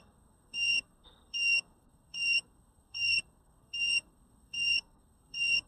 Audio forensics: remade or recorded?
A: remade